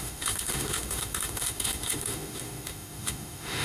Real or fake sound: fake